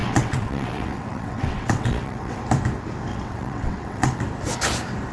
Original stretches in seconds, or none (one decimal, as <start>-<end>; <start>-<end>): 2.4-3.1; 4.2-5.1